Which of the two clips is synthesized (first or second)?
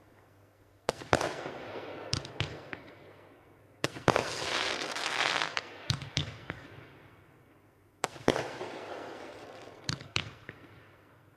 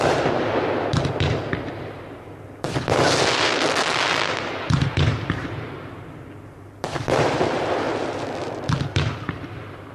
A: first